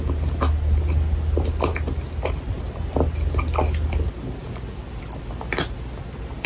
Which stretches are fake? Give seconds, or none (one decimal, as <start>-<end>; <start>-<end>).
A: none